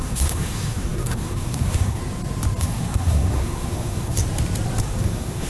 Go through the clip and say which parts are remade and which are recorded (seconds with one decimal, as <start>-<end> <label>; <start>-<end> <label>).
0.0-2.0 remade; 2.0-2.6 recorded; 2.6-4.2 remade; 4.2-4.8 recorded; 4.8-5.5 remade